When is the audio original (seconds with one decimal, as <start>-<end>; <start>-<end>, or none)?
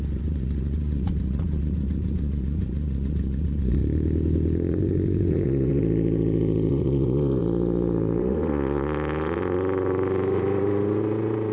3.8-4.7; 5.8-6.7; 7.4-8.2